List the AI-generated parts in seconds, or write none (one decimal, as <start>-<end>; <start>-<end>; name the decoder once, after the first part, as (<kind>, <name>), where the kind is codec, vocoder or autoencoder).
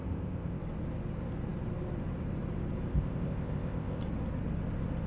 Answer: 0.0-0.6 (codec, ZipCodec); 2.9-4.0